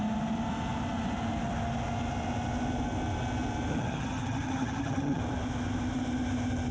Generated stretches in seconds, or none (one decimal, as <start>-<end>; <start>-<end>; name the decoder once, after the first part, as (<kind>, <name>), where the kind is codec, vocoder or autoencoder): 3.7-5.2 (vocoder, HiFi-GAN)